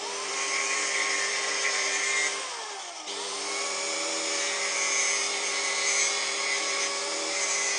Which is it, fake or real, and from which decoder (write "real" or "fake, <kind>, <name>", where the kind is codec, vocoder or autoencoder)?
fake, vocoder, BigVGAN v2